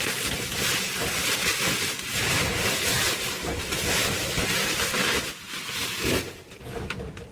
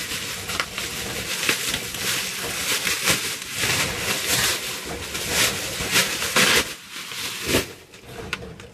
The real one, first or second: second